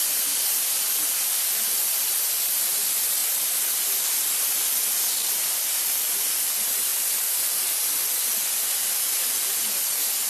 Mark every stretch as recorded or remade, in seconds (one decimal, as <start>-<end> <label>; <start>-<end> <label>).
0.0-10.3 recorded